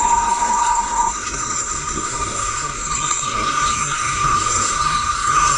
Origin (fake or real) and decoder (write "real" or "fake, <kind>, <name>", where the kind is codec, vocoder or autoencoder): fake, codec, SNAC